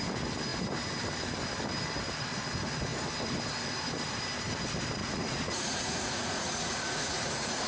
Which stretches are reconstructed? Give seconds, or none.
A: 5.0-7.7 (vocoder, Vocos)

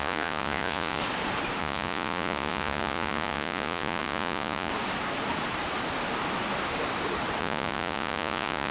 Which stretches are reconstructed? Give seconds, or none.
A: 0.0-1.0 (vocoder, Vocos); 1.6-4.7; 7.4-8.7

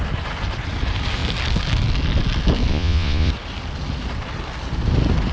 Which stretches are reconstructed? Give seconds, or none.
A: 2.7-3.3 (vocoder, Vocos)

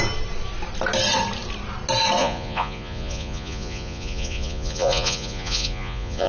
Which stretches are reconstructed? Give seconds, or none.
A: 2.2-6.3 (vocoder, Vocos)